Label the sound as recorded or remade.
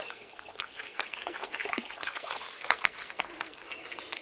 remade